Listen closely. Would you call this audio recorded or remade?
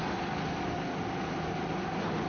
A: recorded